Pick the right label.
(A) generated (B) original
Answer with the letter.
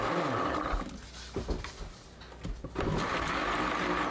B